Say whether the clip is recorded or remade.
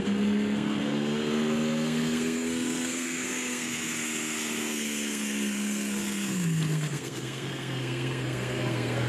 remade